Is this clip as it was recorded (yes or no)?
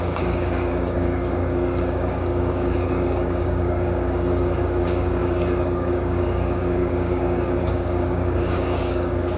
no